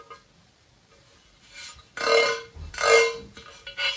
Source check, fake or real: real